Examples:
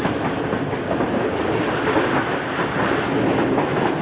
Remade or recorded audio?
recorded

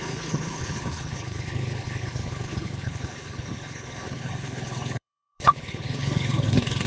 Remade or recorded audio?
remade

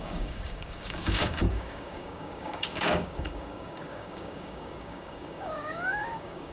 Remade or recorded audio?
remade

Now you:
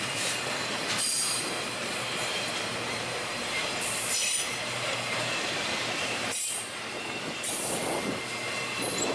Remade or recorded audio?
remade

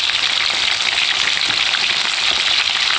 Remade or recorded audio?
recorded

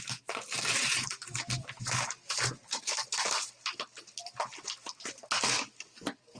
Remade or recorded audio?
recorded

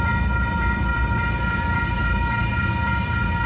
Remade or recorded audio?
recorded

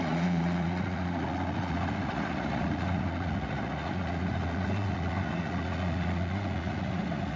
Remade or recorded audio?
remade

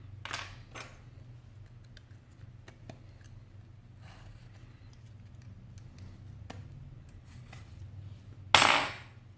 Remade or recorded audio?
recorded